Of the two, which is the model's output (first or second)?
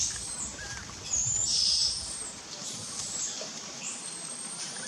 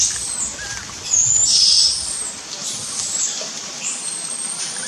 first